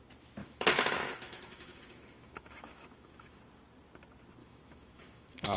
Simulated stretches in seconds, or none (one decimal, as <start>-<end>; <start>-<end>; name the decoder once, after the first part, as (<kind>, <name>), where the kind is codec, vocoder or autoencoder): 0.4-3.4 (autoencoder, DAC-VAE); 4.4-5.6